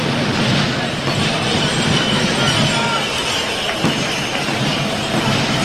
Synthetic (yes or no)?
no